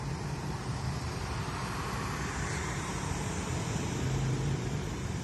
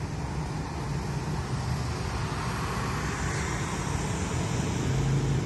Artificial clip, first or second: first